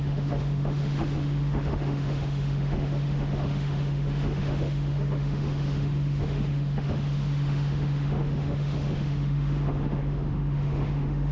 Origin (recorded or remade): remade